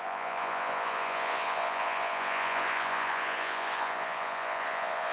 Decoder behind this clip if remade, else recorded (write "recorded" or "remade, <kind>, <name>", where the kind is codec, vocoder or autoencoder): remade, vocoder, Vocos